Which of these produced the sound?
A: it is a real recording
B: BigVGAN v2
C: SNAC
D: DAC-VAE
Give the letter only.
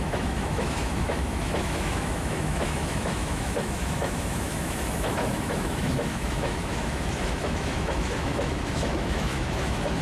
D